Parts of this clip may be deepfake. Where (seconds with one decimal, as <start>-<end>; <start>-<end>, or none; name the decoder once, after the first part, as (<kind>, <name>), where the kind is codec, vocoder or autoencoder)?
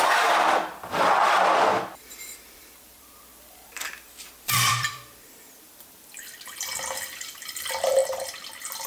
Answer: 0.0-8.0 (vocoder, BigVGAN v2)